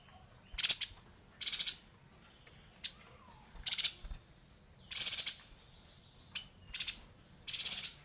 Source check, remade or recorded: recorded